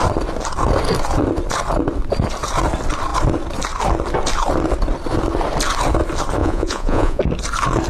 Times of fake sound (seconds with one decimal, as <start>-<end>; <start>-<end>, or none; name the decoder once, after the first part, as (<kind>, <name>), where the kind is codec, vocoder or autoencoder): 6.4-7.2 (vocoder, Vocos)